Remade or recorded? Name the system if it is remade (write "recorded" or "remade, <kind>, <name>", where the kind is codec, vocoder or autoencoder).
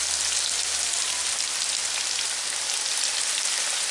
recorded